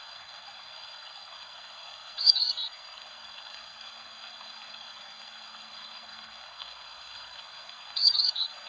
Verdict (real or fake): fake